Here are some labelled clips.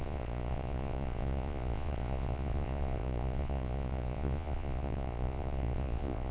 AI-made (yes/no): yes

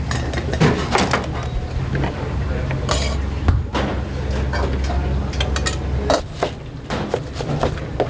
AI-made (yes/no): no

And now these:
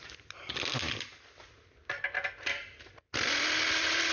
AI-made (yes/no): no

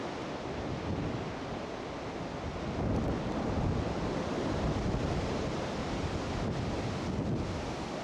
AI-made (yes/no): no